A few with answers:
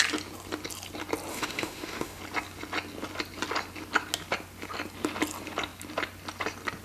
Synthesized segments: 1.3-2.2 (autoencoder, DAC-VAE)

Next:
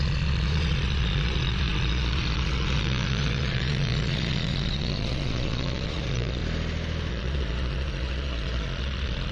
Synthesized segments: 0.0-6.4 (vocoder, Vocos); 7.1-9.3